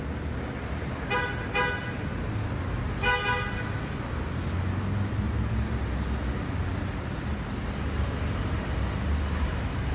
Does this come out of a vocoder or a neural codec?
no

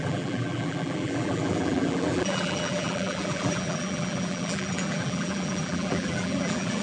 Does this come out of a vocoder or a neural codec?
yes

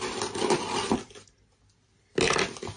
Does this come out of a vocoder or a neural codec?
no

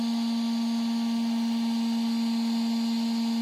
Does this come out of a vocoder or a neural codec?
no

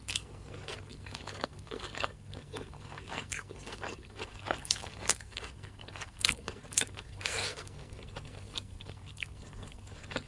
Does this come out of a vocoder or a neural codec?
yes